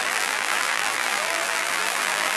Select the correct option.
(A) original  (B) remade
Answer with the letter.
B